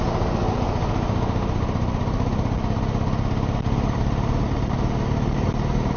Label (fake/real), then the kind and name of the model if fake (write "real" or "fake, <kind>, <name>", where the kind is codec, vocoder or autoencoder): real